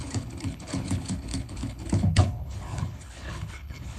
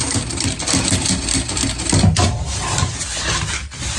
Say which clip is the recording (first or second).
second